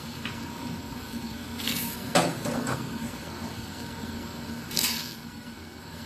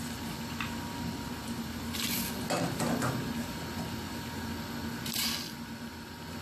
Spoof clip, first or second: first